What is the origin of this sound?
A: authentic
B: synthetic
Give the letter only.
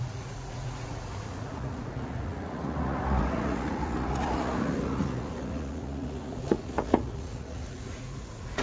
B